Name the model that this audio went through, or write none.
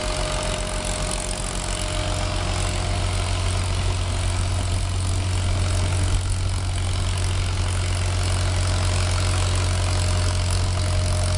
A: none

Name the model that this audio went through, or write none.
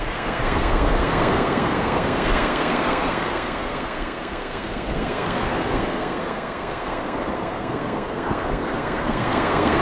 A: codec, SNAC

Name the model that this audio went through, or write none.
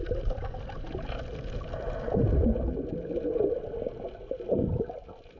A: none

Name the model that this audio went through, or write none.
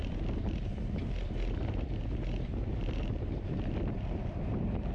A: none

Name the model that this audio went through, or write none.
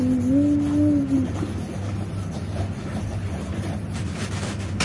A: none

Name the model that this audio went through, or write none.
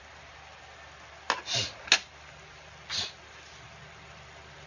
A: none